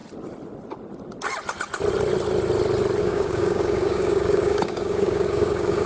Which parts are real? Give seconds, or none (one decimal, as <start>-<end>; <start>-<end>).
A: 0.0-3.0